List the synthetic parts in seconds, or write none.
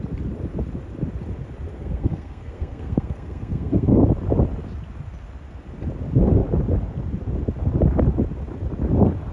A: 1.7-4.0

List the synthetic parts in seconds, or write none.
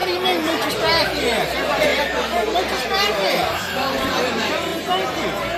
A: 0.7-4.7